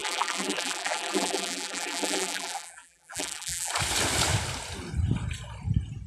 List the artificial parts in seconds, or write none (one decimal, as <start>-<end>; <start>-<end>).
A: 0.0-3.7